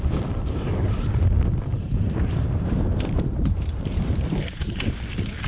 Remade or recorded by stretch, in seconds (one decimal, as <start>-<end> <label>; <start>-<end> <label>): 0.0-1.7 recorded; 1.7-5.0 remade; 5.0-5.5 recorded